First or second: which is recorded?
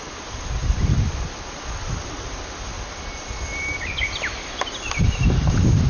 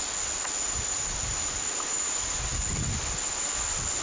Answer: second